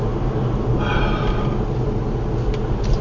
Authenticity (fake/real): real